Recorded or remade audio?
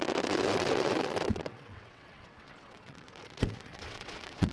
remade